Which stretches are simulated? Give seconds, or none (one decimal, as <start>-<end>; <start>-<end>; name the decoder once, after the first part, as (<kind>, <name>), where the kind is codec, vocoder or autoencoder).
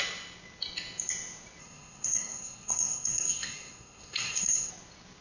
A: 1.6-4.7 (codec, SNAC)